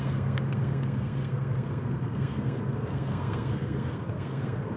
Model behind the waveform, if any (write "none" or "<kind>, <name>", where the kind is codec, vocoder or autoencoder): codec, SNAC